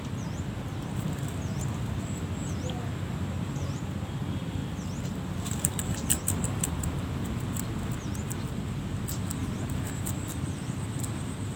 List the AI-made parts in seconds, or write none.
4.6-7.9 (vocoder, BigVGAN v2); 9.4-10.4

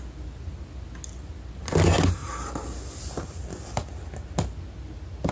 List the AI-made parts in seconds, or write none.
none

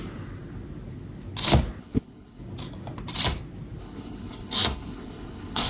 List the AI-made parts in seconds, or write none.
1.8-2.4 (codec, HILCodec); 3.8-5.7